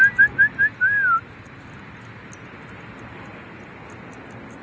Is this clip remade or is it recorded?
recorded